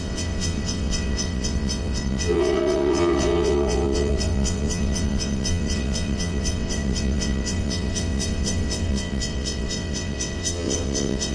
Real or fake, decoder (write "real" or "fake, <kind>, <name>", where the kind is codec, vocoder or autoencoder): fake, vocoder, WaveNeXt